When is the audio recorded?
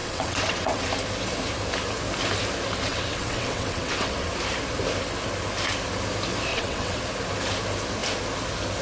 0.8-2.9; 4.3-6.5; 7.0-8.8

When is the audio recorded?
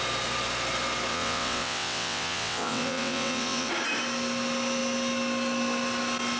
0.0-1.1; 3.7-6.4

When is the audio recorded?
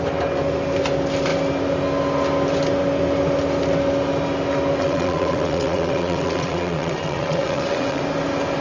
0.0-4.8; 8.0-8.6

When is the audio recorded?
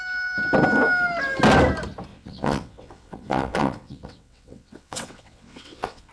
0.0-2.1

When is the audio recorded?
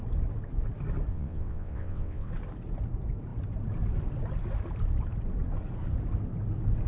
0.0-1.1; 2.3-6.9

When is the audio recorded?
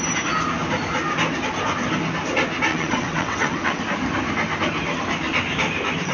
0.0-2.7; 3.8-6.1